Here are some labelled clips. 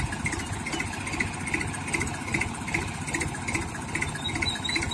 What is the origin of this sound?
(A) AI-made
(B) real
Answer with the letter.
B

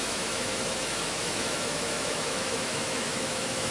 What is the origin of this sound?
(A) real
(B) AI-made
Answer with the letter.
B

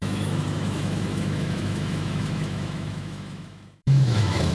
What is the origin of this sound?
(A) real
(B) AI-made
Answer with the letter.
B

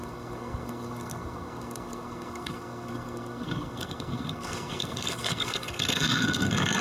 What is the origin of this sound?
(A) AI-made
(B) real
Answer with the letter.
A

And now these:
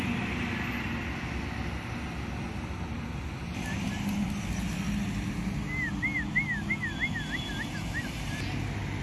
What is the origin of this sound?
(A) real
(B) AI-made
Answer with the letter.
A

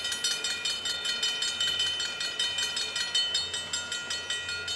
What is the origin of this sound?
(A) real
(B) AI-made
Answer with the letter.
A